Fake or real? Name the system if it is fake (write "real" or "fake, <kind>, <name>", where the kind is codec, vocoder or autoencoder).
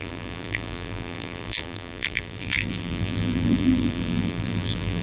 fake, vocoder, BigVGAN v2